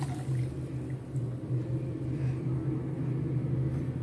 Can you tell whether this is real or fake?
real